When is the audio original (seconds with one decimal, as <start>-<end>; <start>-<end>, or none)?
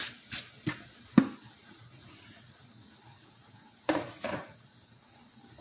0.0-1.6; 5.0-5.6